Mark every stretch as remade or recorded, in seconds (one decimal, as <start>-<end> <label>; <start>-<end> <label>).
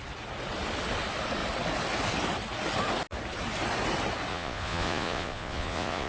0.0-4.3 recorded; 4.3-6.1 remade